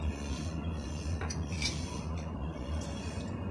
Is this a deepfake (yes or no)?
yes